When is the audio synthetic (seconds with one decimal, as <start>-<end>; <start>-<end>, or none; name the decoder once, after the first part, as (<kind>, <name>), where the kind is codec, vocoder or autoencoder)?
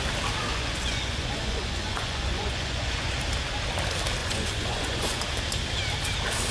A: 0.5-3.2 (vocoder, Vocos); 4.2-5.2